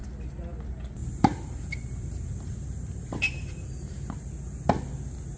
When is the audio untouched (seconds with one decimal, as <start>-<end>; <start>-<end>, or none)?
0.0-1.0; 4.2-5.4